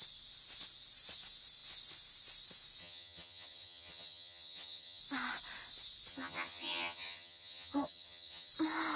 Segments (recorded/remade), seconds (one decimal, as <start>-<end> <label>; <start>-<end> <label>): 0.0-2.8 recorded; 2.8-5.0 remade; 5.0-6.1 recorded; 6.1-8.5 remade; 8.5-9.0 recorded